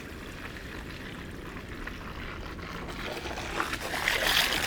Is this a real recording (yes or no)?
yes